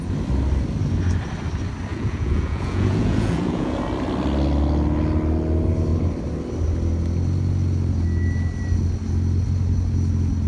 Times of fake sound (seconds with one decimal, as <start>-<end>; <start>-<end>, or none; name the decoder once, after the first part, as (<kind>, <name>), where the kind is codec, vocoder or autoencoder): 1.9-3.8 (vocoder, Vocos)